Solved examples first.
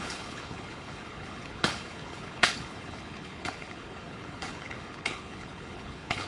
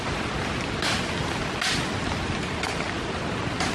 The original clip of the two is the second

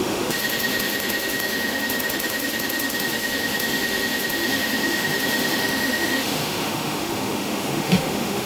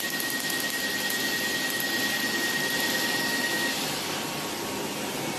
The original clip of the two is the second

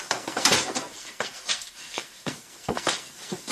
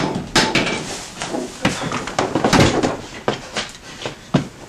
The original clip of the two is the second